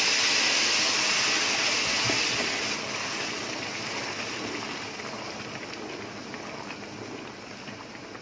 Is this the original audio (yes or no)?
yes